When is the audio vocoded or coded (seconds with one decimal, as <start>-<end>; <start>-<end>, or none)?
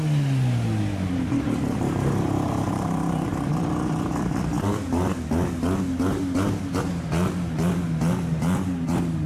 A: 0.9-4.4